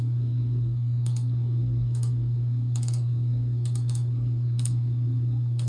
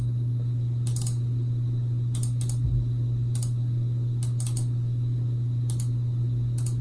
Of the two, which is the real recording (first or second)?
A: second